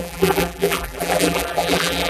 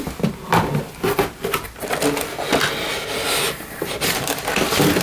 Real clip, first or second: second